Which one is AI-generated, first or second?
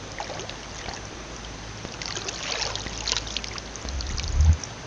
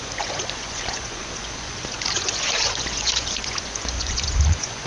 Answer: second